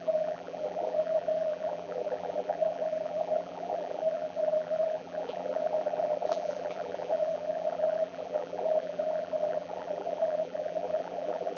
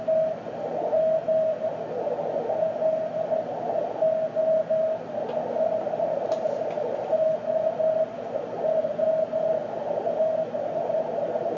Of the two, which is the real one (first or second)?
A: second